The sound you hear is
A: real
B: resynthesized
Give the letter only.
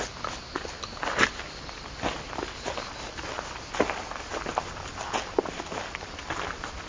A